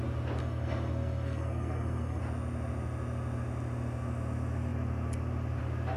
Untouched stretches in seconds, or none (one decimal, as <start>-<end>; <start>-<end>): 0.0-0.4; 2.2-6.0